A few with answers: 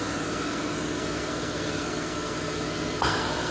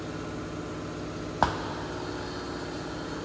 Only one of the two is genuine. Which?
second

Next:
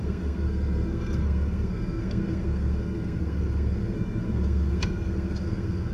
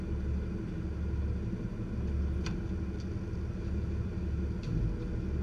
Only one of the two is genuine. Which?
second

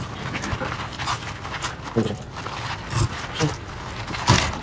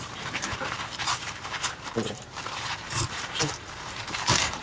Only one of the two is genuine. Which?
first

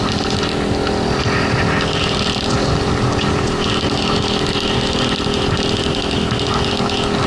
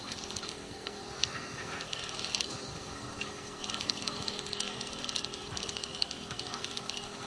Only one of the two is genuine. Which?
first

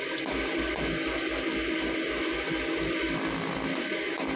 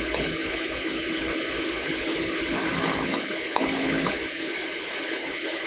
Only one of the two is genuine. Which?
first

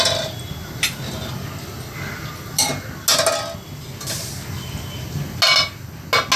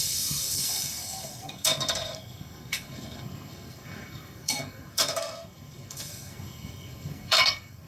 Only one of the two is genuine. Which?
first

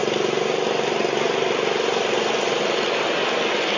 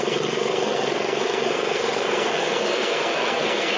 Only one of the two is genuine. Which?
first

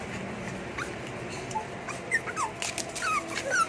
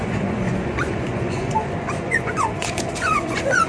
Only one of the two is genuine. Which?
first